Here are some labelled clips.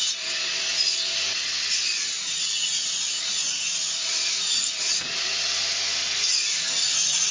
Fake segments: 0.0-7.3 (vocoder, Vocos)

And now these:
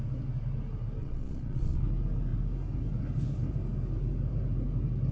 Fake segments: 1.0-1.8 (vocoder, Vocos)

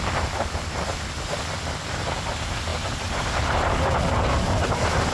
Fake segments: none

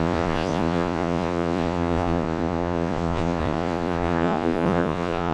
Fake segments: 0.0-5.3 (vocoder, Vocos)